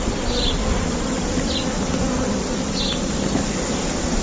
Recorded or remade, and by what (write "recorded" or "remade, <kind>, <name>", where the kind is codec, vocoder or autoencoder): recorded